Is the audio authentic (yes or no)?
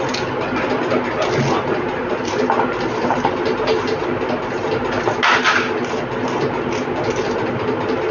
yes